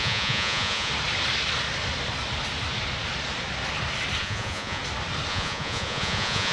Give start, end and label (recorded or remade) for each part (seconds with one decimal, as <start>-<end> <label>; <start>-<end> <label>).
0.0-0.9 remade; 0.9-4.2 recorded; 4.2-4.8 remade; 4.8-5.3 recorded; 5.3-6.5 remade